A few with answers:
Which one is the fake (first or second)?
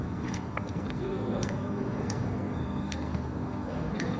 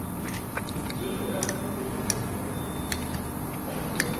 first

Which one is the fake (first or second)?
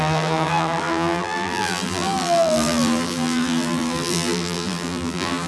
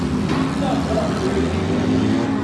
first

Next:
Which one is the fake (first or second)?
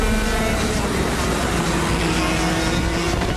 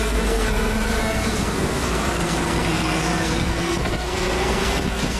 second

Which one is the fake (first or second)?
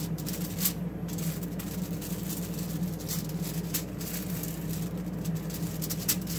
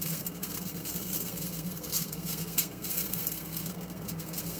second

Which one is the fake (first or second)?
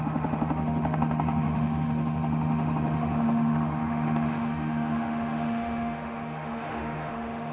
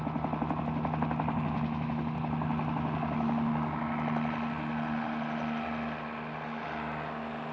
first